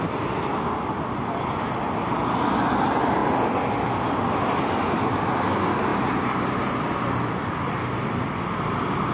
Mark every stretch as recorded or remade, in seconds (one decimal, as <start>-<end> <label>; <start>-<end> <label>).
0.0-5.9 recorded; 5.9-9.1 remade